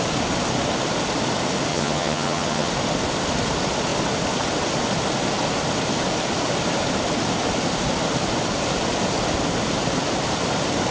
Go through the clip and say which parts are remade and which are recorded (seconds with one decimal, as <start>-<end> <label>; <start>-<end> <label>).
0.0-1.7 recorded; 1.7-2.7 remade; 2.7-10.9 recorded